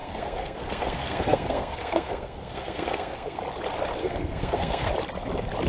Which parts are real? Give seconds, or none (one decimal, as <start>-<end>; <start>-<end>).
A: 3.4-4.0; 4.9-5.7